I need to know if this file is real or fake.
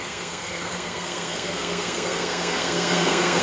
fake